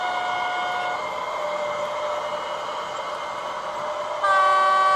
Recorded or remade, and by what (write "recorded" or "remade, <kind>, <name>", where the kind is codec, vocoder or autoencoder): recorded